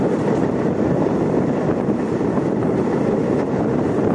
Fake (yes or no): no